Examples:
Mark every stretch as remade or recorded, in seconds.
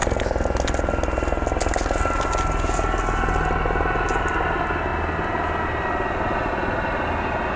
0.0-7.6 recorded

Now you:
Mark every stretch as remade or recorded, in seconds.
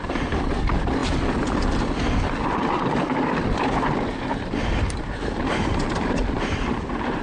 0.0-4.6 recorded; 4.6-7.2 remade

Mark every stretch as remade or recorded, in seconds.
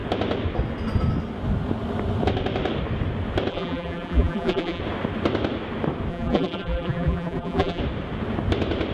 0.0-3.5 recorded; 3.5-4.8 remade; 4.8-6.1 recorded; 6.1-7.8 remade; 7.8-8.9 recorded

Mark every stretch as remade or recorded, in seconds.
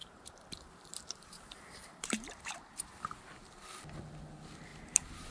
0.0-3.2 remade; 3.2-4.7 recorded; 4.7-5.3 remade